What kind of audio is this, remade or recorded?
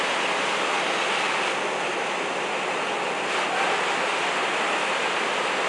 recorded